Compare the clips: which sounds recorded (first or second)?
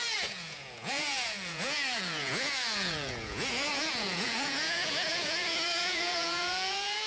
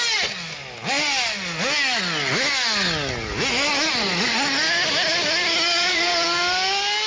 second